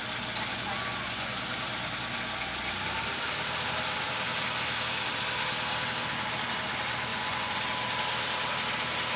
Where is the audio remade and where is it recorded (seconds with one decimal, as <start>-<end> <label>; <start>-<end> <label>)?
0.0-0.5 recorded; 0.5-1.4 remade; 1.4-7.1 recorded; 7.1-7.6 remade; 7.6-9.2 recorded